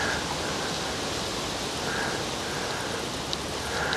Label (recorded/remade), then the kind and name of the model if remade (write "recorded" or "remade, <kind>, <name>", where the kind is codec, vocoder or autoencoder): recorded